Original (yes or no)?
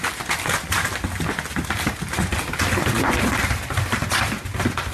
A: yes